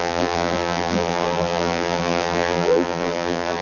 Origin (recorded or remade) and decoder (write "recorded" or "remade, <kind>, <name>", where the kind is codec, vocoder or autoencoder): remade, vocoder, BigVGAN v2